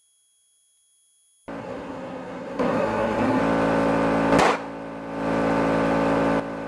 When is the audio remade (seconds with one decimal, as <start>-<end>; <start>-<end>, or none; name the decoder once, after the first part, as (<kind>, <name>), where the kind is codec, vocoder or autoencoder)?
1.6-3.4 (codec, SNAC)